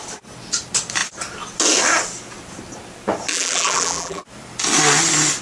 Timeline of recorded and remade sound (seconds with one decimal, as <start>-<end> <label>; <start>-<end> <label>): 0.0-3.3 recorded; 3.3-4.2 remade; 4.2-5.4 recorded